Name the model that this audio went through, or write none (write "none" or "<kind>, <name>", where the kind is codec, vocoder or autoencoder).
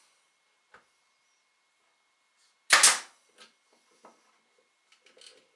none